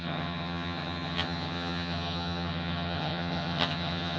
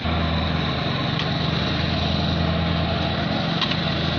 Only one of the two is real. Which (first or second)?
second